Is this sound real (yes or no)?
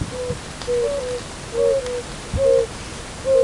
yes